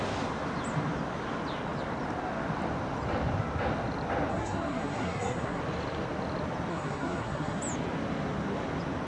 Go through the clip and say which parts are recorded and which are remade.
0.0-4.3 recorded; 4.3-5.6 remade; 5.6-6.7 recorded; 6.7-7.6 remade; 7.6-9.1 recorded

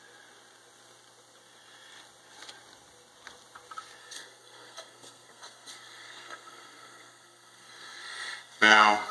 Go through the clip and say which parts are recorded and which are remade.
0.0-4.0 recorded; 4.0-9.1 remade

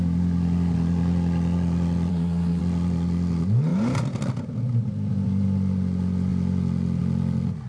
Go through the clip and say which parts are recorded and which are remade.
0.0-2.1 recorded; 2.1-2.6 remade; 2.6-7.7 recorded

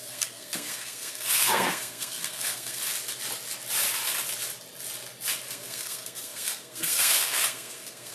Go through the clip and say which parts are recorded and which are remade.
0.0-2.8 remade; 2.8-5.5 recorded; 5.5-8.1 remade

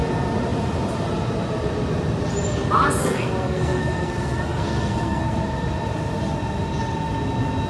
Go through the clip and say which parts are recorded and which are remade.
0.0-3.0 recorded; 3.0-5.4 remade; 5.4-7.7 recorded

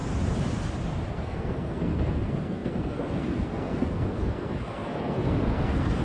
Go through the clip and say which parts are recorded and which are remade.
0.0-1.1 recorded; 1.1-6.0 remade